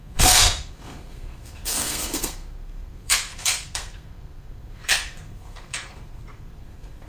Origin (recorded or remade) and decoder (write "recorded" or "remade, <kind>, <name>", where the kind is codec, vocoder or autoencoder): remade, codec, SNAC